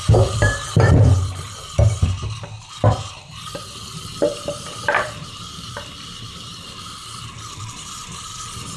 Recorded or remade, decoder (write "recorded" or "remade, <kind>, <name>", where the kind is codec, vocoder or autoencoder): remade, vocoder, BigVGAN v2